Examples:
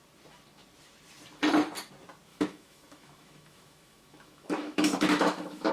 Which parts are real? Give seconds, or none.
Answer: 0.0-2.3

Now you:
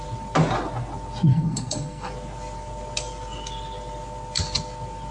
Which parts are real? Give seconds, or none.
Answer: 0.0-1.3; 2.1-5.1